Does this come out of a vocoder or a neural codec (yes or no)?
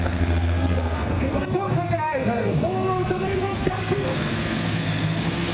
yes